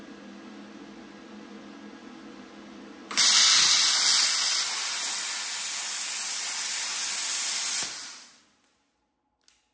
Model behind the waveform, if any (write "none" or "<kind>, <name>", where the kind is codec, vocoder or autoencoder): none